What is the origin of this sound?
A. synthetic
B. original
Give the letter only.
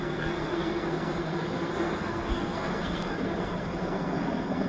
A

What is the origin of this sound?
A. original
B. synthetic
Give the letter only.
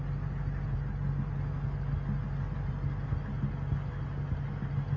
A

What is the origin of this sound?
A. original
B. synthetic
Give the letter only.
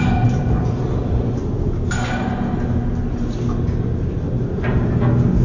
A